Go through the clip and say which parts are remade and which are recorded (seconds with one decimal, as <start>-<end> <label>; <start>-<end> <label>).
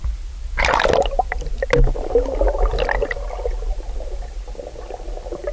0.0-5.5 recorded